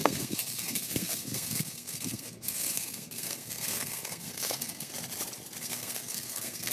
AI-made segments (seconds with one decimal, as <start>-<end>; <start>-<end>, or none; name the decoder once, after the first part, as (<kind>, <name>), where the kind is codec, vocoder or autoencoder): 0.0-4.9 (codec, SNAC); 5.6-6.7